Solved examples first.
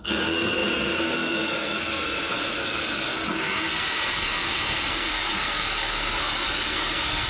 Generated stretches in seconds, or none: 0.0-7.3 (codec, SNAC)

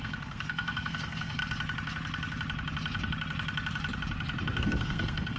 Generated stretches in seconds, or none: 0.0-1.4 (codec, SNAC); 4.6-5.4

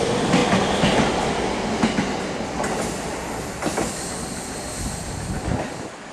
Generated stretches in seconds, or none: none

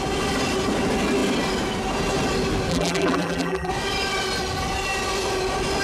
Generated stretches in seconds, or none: 2.7-3.7 (vocoder, BigVGAN v2)